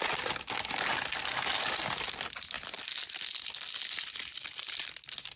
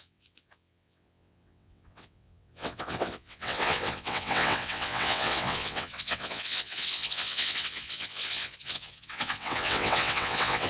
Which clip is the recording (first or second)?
first